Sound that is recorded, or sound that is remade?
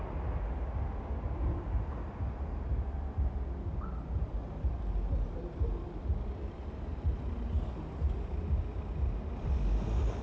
recorded